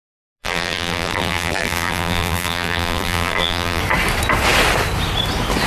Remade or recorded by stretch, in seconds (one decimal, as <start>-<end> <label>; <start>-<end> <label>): 0.0-0.4 recorded; 0.4-3.8 remade; 3.8-5.7 recorded